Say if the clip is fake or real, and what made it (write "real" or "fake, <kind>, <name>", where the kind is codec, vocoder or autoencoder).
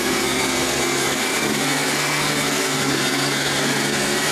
fake, codec, SNAC